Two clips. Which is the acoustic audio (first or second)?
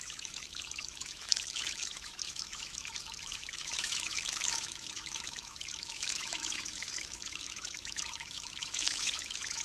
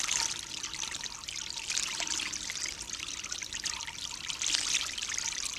second